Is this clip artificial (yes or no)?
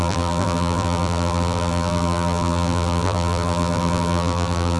yes